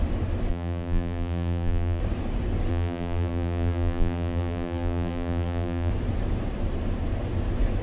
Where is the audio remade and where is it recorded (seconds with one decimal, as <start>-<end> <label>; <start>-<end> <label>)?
0.0-0.5 recorded; 0.5-2.0 remade; 2.0-2.7 recorded; 2.7-5.9 remade; 5.9-7.8 recorded